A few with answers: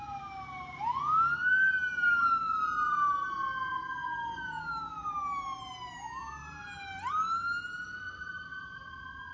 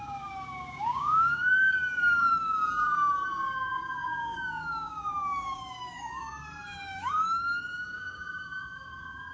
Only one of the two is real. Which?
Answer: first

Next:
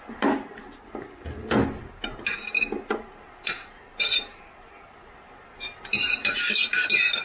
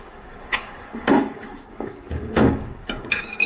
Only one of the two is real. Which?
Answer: first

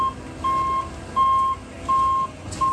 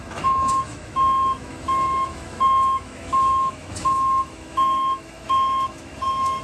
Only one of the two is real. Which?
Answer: first